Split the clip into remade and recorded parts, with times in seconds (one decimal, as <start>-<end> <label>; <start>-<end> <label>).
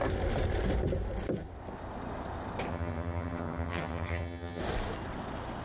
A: 0.0-2.7 recorded; 2.7-4.6 remade; 4.6-5.6 recorded